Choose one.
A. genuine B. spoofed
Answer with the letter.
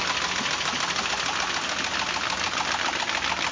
A